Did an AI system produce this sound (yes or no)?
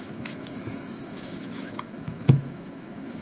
yes